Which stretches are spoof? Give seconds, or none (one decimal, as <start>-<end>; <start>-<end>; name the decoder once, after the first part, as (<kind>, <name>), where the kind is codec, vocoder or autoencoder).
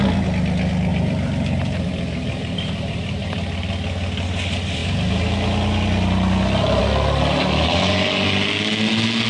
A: 0.9-3.7 (vocoder, BigVGAN v2)